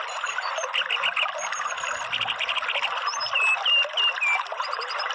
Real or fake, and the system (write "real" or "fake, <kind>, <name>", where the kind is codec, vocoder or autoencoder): real